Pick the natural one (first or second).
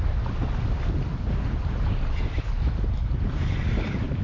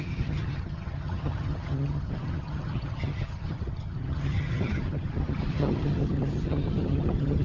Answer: first